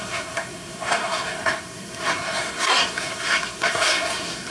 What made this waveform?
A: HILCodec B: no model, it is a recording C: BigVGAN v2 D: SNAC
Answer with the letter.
D